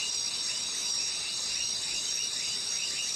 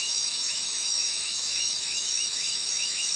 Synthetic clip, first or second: second